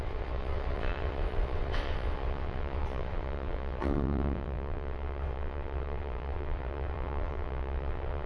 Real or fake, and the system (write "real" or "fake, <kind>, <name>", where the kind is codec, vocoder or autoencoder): fake, vocoder, WaveNeXt